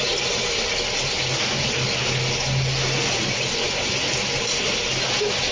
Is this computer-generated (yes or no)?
no